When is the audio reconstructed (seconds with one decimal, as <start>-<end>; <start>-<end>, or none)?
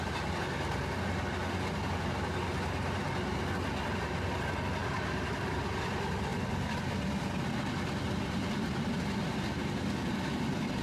none